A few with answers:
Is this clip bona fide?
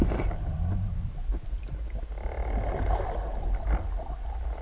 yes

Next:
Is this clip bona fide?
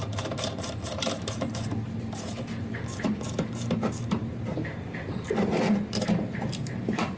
no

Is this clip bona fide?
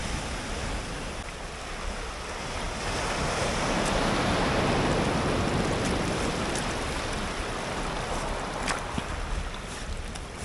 yes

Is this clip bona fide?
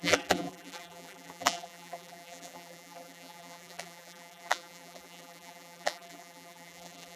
no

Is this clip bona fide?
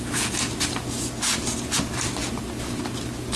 yes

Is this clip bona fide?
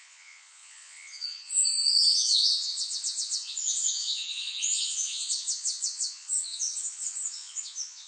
no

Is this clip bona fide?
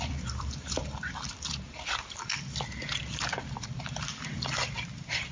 no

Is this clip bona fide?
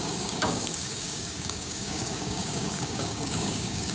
no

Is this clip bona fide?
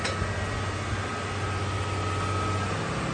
yes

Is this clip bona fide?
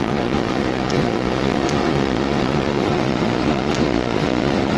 no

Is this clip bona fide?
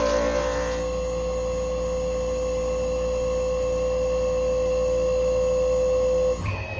yes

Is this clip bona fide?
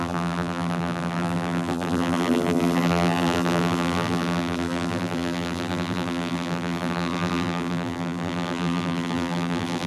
no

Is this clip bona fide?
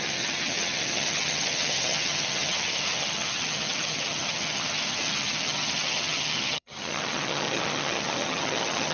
no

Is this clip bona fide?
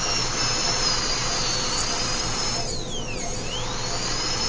yes